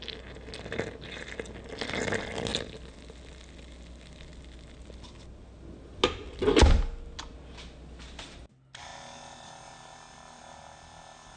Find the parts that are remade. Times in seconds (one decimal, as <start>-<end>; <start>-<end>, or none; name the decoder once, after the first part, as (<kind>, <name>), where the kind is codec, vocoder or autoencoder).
none